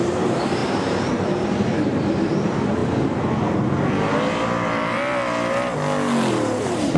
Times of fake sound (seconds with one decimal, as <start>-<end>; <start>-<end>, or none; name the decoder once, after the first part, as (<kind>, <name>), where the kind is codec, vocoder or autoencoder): 0.0-2.8 (vocoder, BigVGAN v2); 6.3-7.0